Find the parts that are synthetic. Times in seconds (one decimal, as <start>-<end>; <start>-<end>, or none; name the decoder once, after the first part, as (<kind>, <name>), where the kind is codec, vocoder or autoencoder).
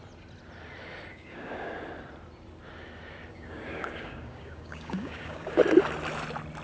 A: 1.1-1.7 (codec, DAC); 3.3-5.6